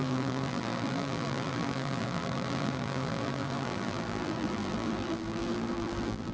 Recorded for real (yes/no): no